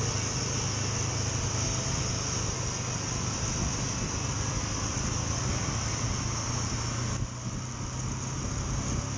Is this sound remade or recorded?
recorded